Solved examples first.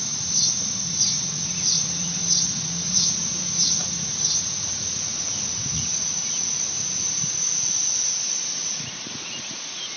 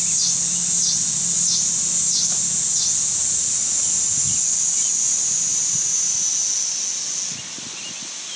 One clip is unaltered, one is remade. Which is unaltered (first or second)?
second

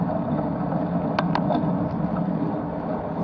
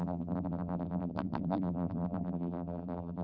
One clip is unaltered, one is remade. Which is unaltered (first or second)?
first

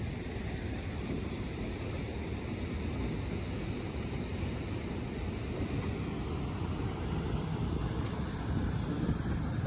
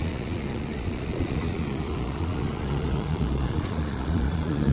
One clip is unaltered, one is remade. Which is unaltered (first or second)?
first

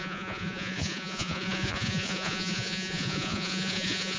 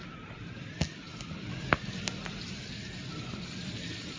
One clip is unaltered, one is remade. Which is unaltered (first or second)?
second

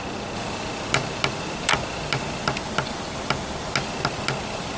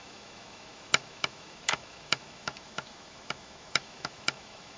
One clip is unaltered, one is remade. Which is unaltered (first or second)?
first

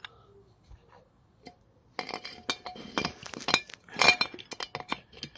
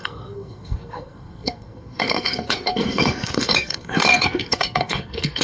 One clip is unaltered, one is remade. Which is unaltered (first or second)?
first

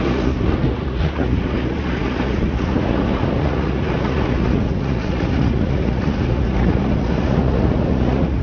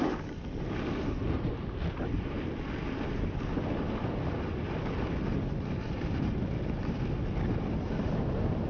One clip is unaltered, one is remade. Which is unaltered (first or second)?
second